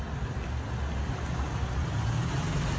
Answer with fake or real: real